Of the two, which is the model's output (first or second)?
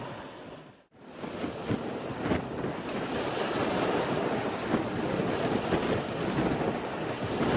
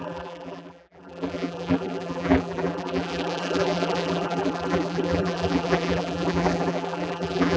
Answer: second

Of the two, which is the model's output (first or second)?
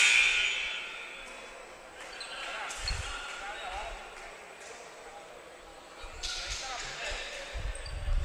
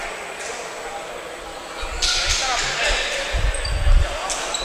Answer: first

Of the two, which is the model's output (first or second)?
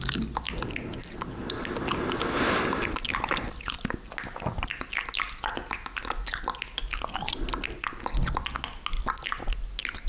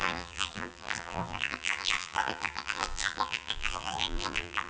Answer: second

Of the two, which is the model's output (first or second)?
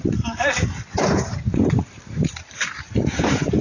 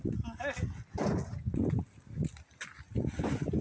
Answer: first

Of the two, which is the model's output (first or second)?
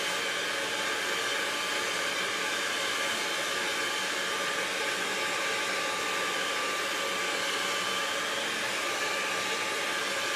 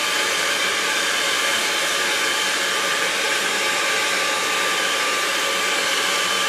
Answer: second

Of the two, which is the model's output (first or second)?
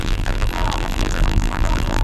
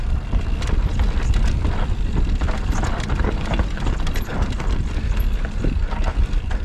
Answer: first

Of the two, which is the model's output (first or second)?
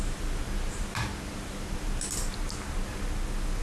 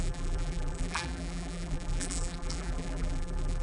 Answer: second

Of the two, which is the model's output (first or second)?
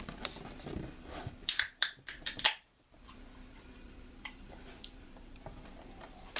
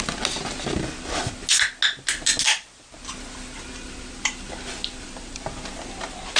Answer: first